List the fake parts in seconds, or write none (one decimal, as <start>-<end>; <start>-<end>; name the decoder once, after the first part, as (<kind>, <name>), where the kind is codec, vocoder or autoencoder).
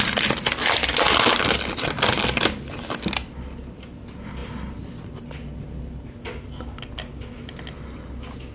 none